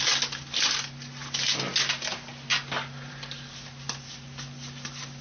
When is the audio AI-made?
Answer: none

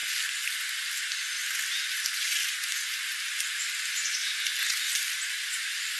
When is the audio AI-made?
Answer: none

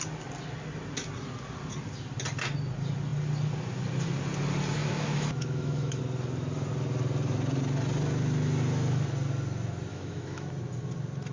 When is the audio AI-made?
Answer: 4.8-6.0 (autoencoder, DAC-VAE); 9.9-10.5

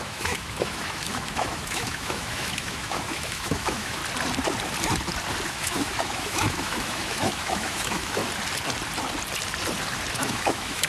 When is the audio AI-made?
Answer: 0.0-4.0 (autoencoder, DAC-VAE); 5.5-8.2; 10.1-10.9

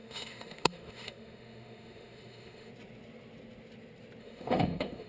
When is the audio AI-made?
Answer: 0.0-2.7 (autoencoder, DAC-VAE); 4.2-5.1

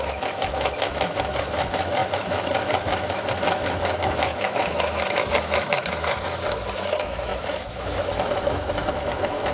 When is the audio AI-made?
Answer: 0.0-9.5 (autoencoder, DAC-VAE)

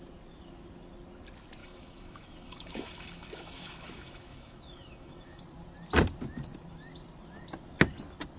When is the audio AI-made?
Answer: 1.6-5.4 (autoencoder, DAC-VAE)